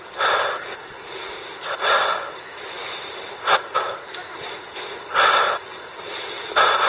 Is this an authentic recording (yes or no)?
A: yes